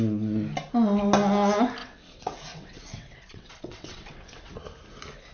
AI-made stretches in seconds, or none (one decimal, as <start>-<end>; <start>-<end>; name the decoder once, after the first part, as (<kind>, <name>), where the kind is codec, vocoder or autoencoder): 1.8-4.5 (vocoder, WaveNeXt)